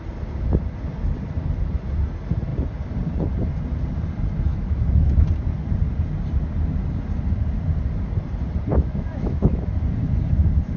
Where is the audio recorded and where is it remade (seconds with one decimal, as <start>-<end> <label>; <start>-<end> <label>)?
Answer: 0.0-4.5 recorded; 4.5-5.2 remade; 5.2-8.7 recorded; 8.7-9.7 remade; 9.7-10.8 recorded